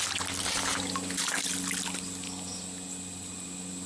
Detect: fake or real real